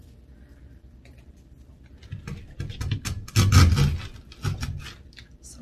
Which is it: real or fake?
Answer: real